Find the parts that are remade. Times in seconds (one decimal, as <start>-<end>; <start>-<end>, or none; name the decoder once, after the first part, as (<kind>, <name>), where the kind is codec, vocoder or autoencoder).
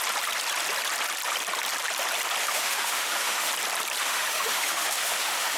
2.4-3.5 (autoencoder, DAC-VAE); 4.0-5.6